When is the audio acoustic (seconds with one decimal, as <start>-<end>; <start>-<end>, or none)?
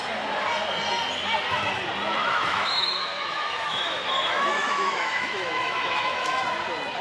0.0-2.2; 6.4-7.0